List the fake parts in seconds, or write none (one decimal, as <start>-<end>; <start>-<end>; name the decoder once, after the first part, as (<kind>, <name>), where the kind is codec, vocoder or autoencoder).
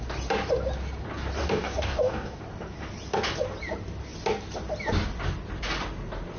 1.4-2.4 (codec, DAC)